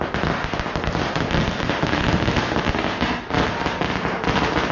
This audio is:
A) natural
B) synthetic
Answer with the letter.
A